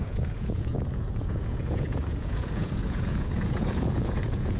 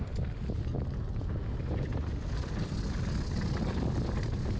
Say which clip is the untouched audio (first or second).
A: second